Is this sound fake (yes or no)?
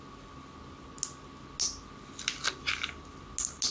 no